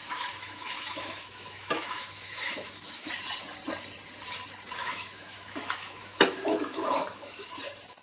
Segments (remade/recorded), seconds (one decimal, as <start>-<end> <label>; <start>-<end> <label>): 0.0-3.1 remade; 3.1-4.8 recorded; 4.8-7.5 remade; 7.5-8.0 recorded